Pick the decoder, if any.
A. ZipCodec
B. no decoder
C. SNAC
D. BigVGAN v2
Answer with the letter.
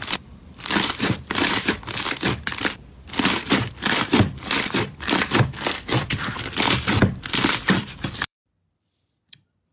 D